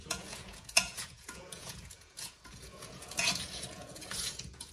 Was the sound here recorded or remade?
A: remade